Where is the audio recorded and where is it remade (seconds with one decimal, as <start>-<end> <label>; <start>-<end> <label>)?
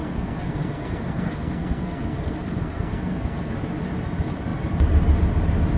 0.0-3.5 remade; 3.5-5.8 recorded